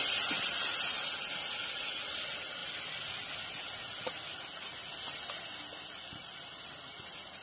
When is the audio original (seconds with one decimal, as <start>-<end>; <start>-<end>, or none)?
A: 0.0-7.4